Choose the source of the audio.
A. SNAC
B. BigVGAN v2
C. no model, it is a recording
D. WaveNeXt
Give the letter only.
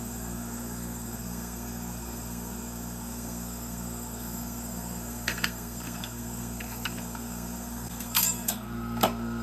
A